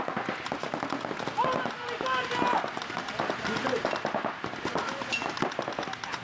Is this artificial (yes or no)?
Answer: no